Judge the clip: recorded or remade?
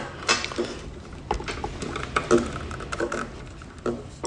recorded